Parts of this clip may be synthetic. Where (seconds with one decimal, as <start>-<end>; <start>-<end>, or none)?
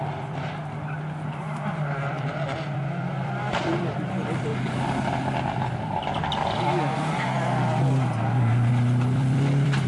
0.0-0.6; 1.4-4.5; 8.7-9.9